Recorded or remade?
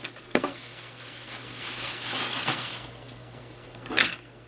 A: remade